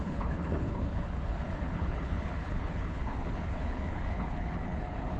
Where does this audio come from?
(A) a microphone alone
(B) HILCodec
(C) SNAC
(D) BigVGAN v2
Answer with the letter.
B